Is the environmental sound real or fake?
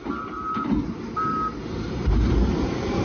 fake